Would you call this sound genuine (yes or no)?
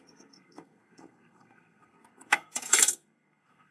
no